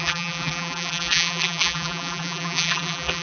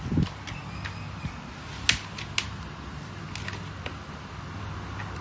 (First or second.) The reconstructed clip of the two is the first